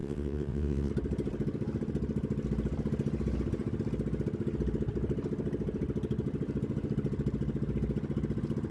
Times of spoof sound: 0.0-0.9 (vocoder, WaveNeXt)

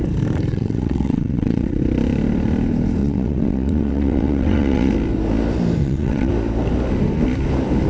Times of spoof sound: 0.5-1.8 (vocoder, WaveNeXt); 3.0-4.9; 5.8-6.3